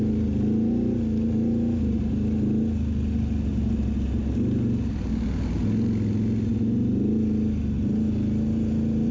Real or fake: real